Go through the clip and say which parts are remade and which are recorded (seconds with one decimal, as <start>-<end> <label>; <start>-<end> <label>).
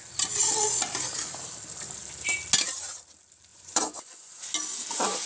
0.0-3.5 recorded; 3.5-4.4 remade; 4.4-5.3 recorded